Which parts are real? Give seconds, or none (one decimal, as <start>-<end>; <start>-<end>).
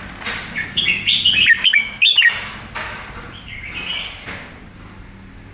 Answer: 0.0-5.5